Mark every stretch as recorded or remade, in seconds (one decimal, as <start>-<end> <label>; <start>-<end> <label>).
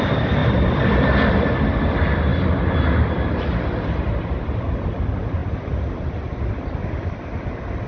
0.0-0.4 recorded; 0.4-1.3 remade; 1.3-5.4 recorded; 5.4-5.9 remade; 5.9-7.9 recorded